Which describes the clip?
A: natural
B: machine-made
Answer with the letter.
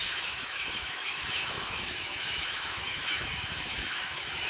B